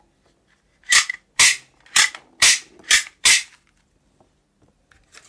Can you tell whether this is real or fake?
real